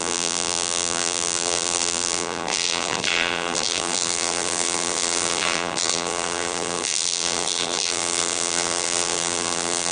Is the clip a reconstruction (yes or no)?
yes